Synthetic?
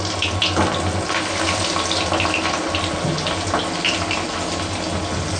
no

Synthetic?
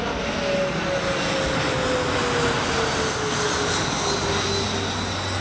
no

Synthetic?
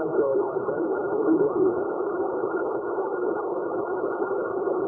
yes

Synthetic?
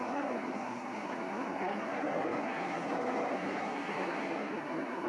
yes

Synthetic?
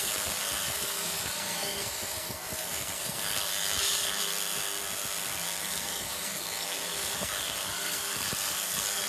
yes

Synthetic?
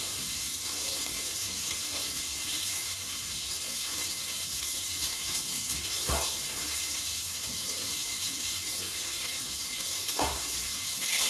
yes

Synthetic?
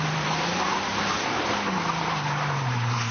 yes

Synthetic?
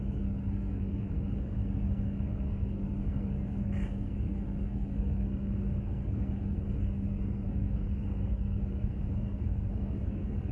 yes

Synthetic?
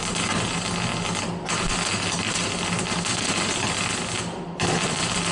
no